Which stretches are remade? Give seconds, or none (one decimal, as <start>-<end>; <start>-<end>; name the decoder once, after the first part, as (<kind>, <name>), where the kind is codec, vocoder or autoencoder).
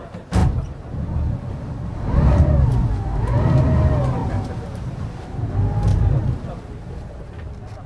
4.2-5.5 (vocoder, BigVGAN v2); 5.9-7.3